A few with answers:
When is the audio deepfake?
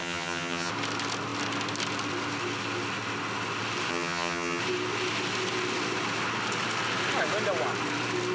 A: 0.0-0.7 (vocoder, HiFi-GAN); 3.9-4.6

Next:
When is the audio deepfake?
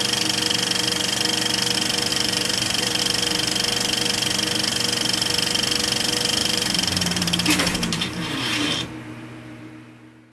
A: 2.1-3.0 (vocoder, BigVGAN v2); 6.4-9.7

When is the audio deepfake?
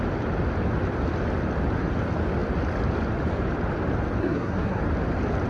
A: 4.2-4.8 (codec, SNAC)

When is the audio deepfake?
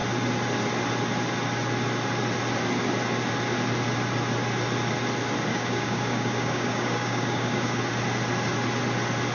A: 5.5-7.8 (codec, DAC)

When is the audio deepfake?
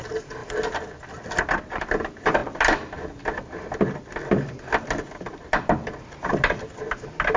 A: none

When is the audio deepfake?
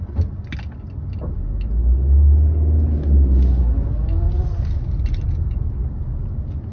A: none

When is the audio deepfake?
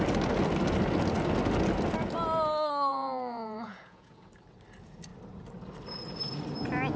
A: 2.9-4.3 (vocoder, Vocos)